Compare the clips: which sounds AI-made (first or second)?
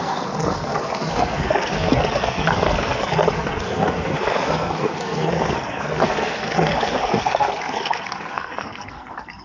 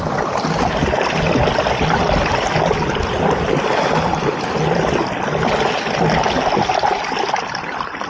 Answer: first